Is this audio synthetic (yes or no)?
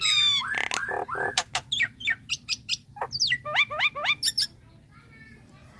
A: no